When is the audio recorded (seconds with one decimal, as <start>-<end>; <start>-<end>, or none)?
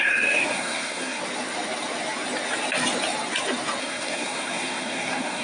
1.2-3.8